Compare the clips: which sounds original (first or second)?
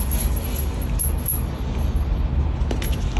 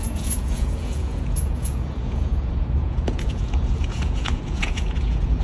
first